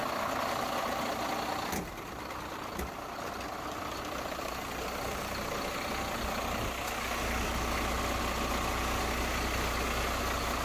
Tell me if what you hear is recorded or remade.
recorded